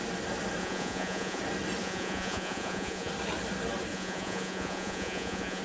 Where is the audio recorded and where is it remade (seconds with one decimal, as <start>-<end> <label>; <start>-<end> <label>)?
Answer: 0.0-0.6 recorded; 0.6-1.4 remade; 1.4-1.8 recorded; 1.8-3.1 remade; 3.1-3.9 recorded; 3.9-5.6 remade